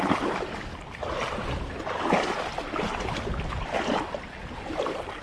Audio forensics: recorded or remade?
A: recorded